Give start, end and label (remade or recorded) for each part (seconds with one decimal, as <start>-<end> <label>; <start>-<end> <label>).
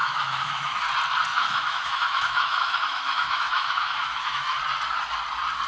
0.0-0.8 remade; 0.8-1.3 recorded; 1.3-4.6 remade; 4.6-5.7 recorded